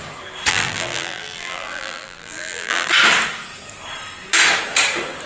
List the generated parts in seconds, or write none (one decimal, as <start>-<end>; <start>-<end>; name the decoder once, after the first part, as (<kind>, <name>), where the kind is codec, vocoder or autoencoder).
0.5-2.9 (vocoder, BigVGAN v2)